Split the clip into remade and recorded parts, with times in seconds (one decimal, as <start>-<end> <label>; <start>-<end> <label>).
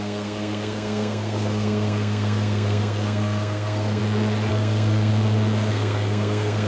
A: 0.0-4.0 remade; 4.0-4.5 recorded; 4.5-5.1 remade; 5.1-5.7 recorded; 5.7-6.7 remade